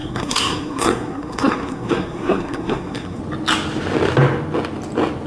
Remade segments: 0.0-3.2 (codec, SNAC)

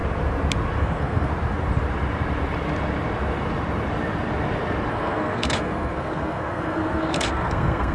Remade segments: 0.8-1.3 (codec, SNAC); 4.9-7.9